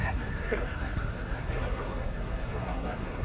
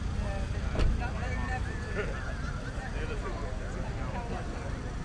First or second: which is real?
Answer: second